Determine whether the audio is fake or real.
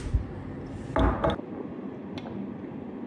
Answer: real